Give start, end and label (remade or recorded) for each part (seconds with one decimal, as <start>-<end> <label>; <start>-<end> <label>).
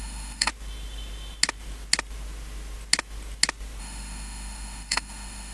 0.0-0.5 remade; 0.5-3.8 recorded; 3.8-5.5 remade